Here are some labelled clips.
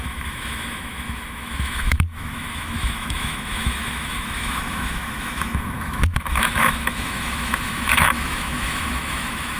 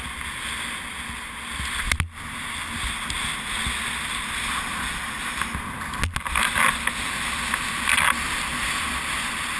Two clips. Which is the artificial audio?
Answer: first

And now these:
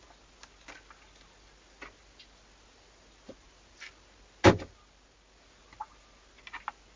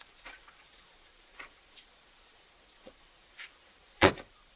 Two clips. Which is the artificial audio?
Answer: second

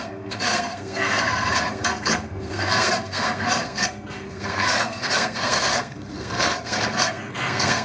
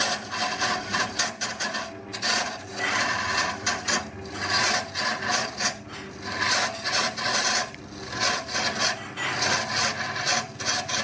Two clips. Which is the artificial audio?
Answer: first